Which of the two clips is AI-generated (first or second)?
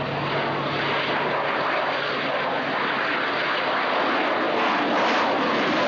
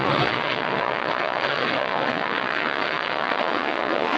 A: second